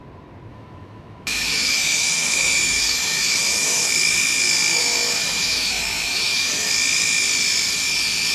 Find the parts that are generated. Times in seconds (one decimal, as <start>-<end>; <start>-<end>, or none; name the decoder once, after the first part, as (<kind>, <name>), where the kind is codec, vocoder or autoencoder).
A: 0.5-3.9 (autoencoder, DAC-VAE); 4.7-6.7